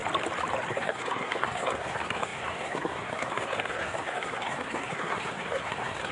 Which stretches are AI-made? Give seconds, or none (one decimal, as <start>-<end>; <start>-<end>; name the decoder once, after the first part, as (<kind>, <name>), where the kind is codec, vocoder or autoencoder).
0.7-6.1 (codec, SNAC)